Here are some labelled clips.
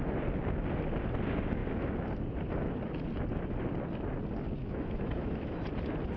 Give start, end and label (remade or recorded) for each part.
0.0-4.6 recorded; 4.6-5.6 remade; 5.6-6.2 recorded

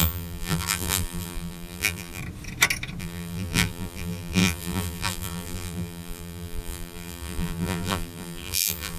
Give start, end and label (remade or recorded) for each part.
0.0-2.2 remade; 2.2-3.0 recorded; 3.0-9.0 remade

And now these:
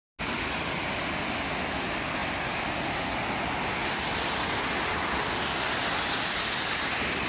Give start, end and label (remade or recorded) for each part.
0.0-7.3 recorded

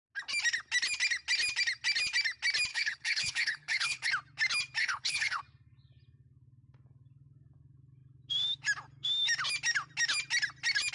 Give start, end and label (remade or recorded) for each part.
0.0-2.7 recorded; 2.7-4.1 remade; 4.1-4.8 recorded; 4.8-5.4 remade; 5.4-10.9 recorded

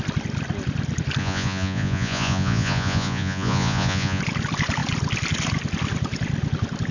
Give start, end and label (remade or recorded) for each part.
0.0-1.2 recorded; 1.2-4.2 remade; 4.2-6.9 recorded

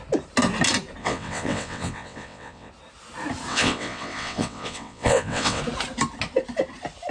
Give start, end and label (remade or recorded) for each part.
0.0-1.0 recorded; 1.0-2.7 remade; 2.7-3.5 recorded; 3.5-5.6 remade; 5.6-7.1 recorded